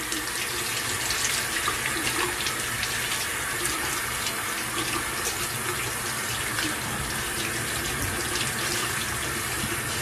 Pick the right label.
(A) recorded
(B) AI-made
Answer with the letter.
A